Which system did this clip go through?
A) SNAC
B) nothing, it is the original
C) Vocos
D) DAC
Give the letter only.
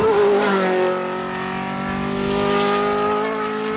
B